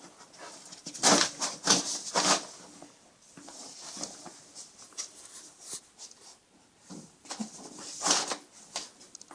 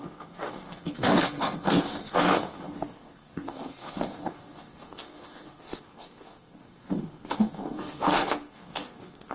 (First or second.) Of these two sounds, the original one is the first